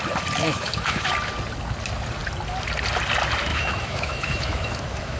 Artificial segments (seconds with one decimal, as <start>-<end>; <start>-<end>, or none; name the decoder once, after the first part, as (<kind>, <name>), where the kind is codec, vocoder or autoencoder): 0.4-1.1 (autoencoder, DAC-VAE); 3.5-5.2